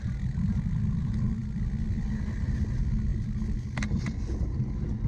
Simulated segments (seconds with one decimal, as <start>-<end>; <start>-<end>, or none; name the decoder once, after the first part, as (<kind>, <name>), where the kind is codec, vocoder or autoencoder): none